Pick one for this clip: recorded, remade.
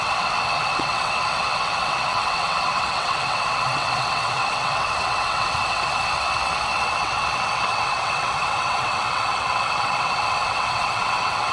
remade